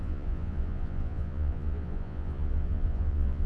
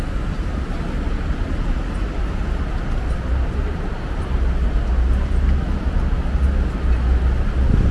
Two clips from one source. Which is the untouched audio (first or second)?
second